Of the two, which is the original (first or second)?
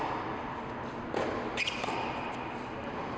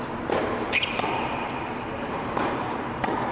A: first